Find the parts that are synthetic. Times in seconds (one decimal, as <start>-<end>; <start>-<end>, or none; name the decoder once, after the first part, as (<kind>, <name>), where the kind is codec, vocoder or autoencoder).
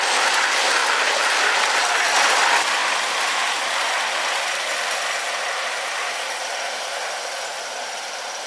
none